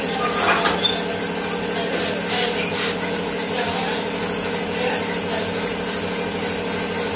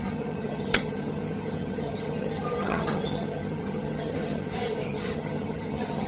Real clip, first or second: first